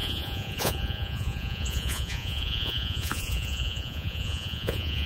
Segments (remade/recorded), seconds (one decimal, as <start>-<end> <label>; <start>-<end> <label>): 0.0-5.1 remade